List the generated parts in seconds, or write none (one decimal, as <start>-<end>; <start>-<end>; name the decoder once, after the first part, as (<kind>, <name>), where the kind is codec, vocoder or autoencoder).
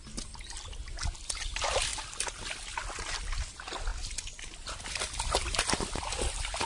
none